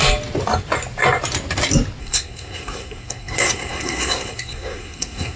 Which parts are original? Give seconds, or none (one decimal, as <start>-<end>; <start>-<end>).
0.0-2.0